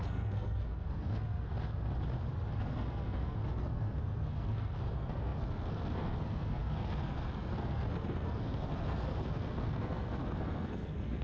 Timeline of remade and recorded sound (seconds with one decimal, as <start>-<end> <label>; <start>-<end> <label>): 0.0-1.9 remade; 1.9-2.5 recorded; 2.5-11.2 remade